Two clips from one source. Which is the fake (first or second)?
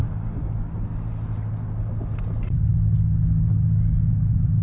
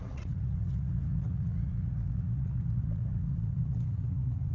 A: second